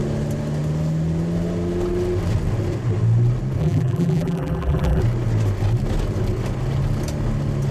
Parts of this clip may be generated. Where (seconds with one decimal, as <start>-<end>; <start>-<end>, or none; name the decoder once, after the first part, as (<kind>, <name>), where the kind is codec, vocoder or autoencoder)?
3.6-5.0 (vocoder, BigVGAN v2)